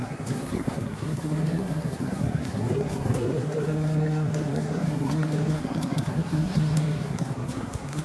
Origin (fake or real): fake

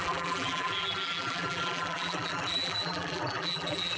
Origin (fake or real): fake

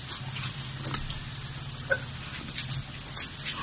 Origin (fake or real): real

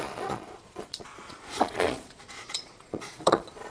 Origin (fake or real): fake